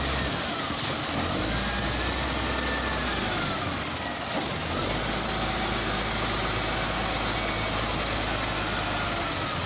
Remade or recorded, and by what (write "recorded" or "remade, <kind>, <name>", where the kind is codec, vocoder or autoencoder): recorded